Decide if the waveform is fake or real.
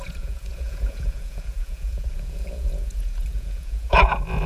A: fake